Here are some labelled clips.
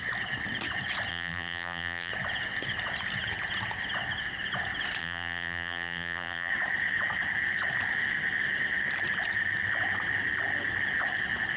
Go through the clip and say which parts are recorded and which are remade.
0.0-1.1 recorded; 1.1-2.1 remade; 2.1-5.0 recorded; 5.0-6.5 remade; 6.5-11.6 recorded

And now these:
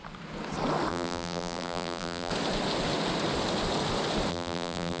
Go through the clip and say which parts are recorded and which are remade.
0.0-0.9 recorded; 0.9-2.3 remade; 2.3-4.3 recorded; 4.3-5.0 remade

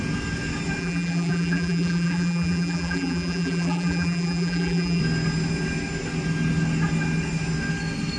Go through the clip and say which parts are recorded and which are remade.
0.0-0.8 recorded; 0.8-5.0 remade; 5.0-8.2 recorded

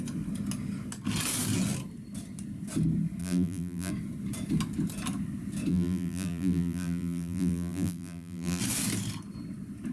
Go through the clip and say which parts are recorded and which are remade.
0.0-3.2 recorded; 3.2-3.9 remade; 3.9-5.7 recorded; 5.7-8.6 remade; 8.6-9.9 recorded

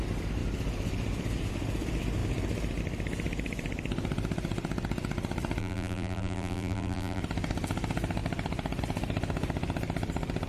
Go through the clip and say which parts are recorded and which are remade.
0.0-5.6 recorded; 5.6-7.2 remade; 7.2-10.5 recorded

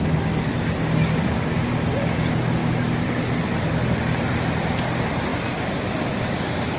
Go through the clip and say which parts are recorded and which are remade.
0.0-5.3 remade; 5.3-5.9 recorded; 5.9-6.8 remade

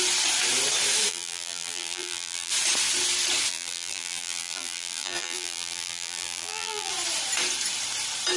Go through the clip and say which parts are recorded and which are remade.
0.0-1.1 recorded; 1.1-2.5 remade; 2.5-3.5 recorded; 3.5-6.9 remade; 6.9-8.4 recorded